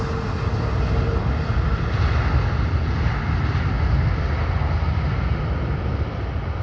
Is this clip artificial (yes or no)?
no